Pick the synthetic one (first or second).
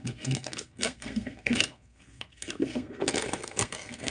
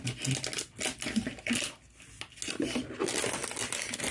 first